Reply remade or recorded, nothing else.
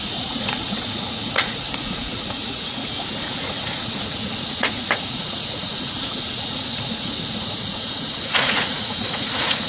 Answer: remade